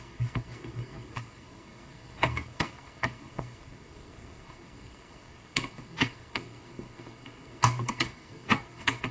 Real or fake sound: fake